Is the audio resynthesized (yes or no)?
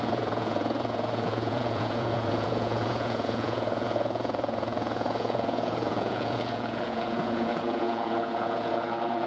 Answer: yes